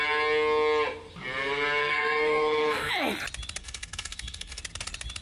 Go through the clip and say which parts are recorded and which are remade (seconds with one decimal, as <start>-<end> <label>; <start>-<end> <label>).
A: 0.0-1.8 recorded; 1.8-2.9 remade; 2.9-3.6 recorded; 3.6-4.6 remade; 4.6-5.2 recorded